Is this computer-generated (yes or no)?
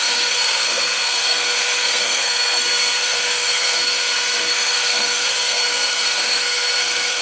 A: yes